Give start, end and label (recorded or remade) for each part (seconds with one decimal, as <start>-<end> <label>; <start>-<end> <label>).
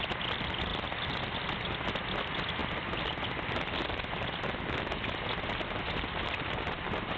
0.0-7.2 recorded